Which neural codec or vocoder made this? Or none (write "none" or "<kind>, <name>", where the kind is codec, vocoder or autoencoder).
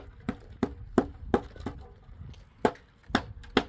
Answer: none